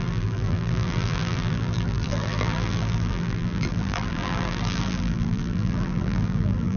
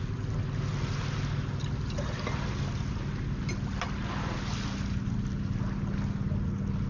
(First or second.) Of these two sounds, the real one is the second